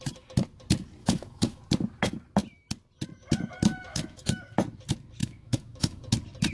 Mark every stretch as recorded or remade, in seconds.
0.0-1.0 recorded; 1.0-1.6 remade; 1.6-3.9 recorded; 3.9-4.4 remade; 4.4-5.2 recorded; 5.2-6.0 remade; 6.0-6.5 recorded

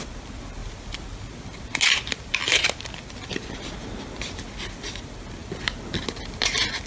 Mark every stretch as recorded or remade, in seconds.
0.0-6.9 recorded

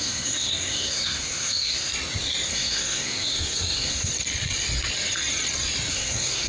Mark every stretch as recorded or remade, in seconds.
0.0-1.9 remade; 1.9-2.5 recorded; 2.5-4.1 remade; 4.1-5.9 recorded; 5.9-6.5 remade

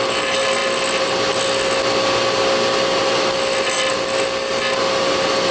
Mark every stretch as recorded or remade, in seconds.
0.0-5.5 recorded

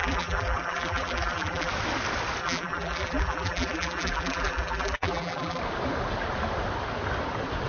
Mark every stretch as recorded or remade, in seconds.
0.0-1.7 remade; 1.7-2.4 recorded; 2.4-5.6 remade; 5.6-7.7 recorded

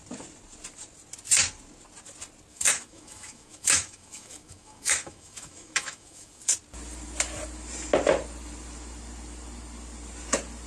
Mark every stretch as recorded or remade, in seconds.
0.0-2.5 recorded; 2.5-6.4 remade; 6.4-10.7 recorded

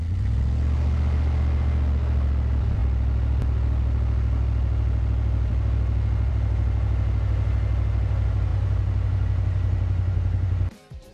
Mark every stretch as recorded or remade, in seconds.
0.0-11.1 recorded